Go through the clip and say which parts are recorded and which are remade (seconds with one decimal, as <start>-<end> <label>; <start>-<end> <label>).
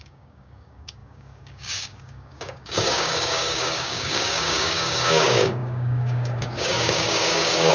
0.0-7.7 remade